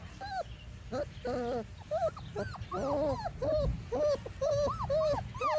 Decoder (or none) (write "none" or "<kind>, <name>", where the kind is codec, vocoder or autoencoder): none